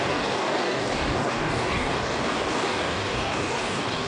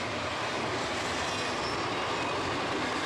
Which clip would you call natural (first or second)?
second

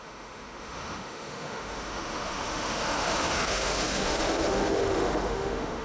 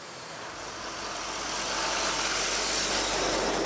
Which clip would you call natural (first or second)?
second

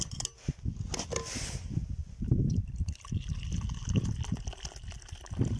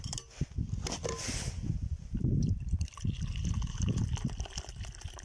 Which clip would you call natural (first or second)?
first